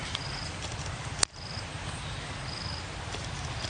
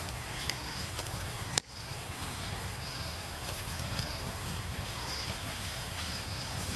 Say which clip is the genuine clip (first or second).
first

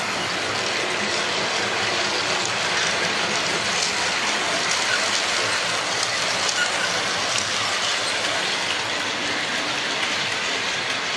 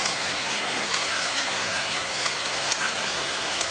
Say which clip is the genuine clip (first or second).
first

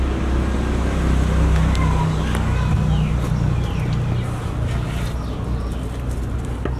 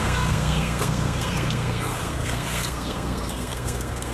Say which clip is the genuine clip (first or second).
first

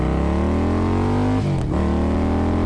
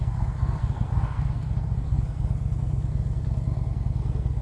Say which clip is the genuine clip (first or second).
first